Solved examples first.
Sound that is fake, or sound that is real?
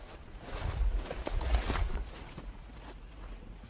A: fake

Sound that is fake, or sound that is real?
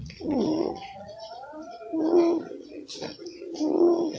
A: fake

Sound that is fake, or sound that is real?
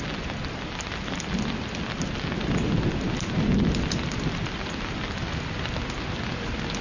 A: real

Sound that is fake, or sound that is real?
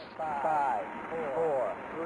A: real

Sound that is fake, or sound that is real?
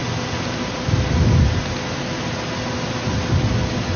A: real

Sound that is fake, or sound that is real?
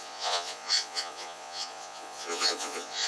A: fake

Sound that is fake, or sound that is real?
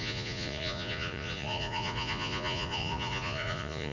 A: fake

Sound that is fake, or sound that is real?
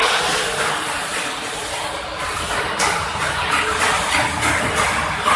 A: real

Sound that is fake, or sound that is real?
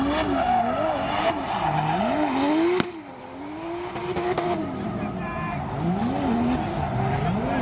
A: real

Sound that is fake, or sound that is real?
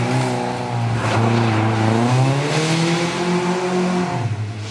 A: real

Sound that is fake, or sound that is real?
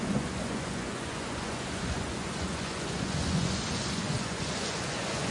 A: fake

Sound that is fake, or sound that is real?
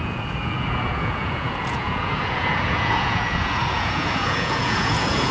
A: fake